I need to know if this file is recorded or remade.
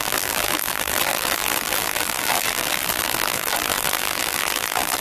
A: remade